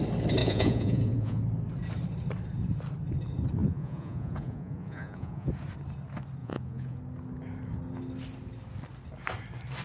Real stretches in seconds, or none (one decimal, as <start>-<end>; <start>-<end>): 0.0-0.4; 1.4-3.6; 5.5-6.4; 7.0-9.8